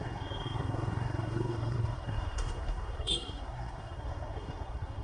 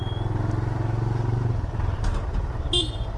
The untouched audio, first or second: second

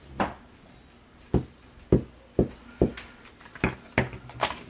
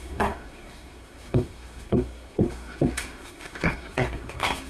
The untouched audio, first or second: first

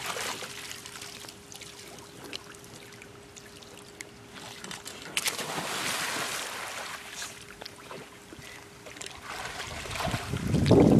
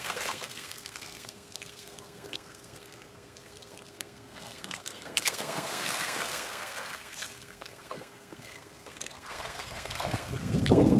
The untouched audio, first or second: first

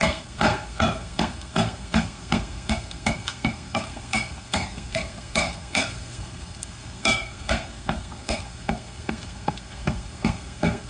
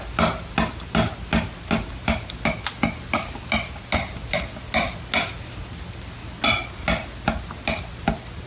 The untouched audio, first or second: second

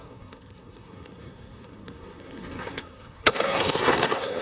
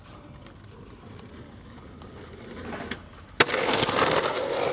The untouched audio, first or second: second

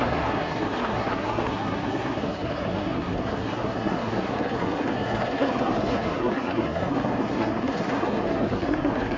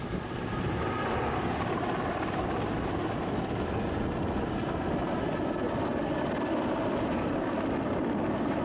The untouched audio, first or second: second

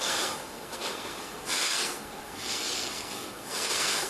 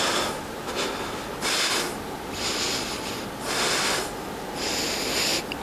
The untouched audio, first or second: second